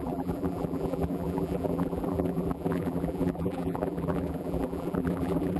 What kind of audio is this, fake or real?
fake